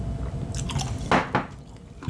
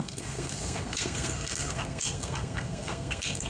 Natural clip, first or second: first